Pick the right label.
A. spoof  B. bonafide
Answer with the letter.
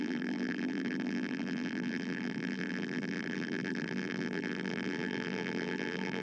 A